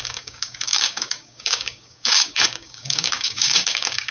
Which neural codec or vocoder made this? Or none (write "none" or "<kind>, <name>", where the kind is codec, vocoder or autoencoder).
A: codec, DAC